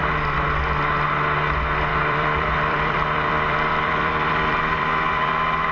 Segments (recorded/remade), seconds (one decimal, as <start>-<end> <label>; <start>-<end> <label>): 0.0-1.9 recorded; 1.9-5.3 remade; 5.3-5.7 recorded